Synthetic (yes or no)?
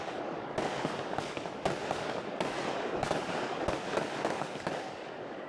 yes